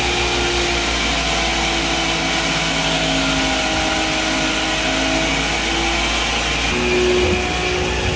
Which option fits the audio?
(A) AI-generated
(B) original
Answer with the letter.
B